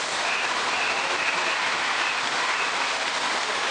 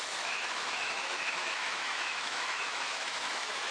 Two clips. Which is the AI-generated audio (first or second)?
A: second